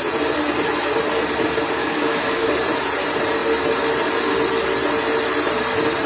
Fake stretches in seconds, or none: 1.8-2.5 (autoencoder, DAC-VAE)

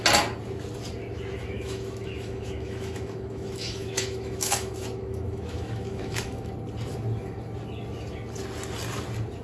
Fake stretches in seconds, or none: 1.4-6.5 (autoencoder, DAC-VAE)

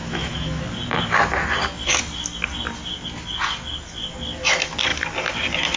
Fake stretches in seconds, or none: 0.0-0.6 (autoencoder, DAC-VAE)

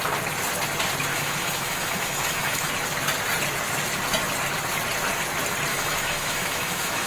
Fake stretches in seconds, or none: 1.1-2.7 (autoencoder, DAC-VAE); 5.7-7.1

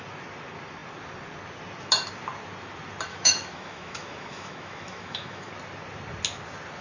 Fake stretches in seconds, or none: 3.1-5.5 (autoencoder, DAC-VAE)

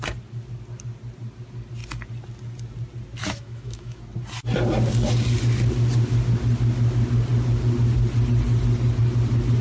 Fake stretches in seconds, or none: 3.2-4.0 (autoencoder, DAC-VAE)

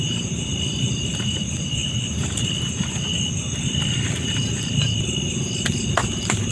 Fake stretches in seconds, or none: none

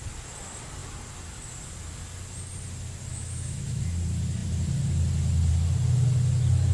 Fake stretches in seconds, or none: 3.1-3.8 (autoencoder, DAC-VAE)